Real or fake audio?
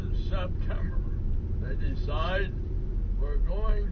real